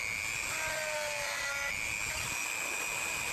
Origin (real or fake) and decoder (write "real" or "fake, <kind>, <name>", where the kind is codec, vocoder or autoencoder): real